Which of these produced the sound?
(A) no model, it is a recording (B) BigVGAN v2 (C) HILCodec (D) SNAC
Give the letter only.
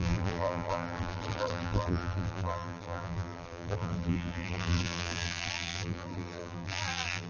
B